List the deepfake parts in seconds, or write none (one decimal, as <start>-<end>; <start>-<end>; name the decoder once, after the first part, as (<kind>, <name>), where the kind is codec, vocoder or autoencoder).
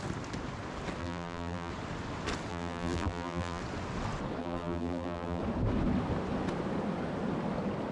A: 1.0-1.7 (vocoder, BigVGAN v2); 2.5-3.6; 4.4-5.4